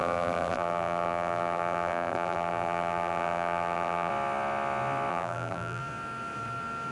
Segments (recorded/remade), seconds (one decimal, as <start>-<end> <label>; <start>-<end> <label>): 0.0-4.1 remade; 4.1-5.1 recorded; 5.1-5.8 remade; 5.8-6.9 recorded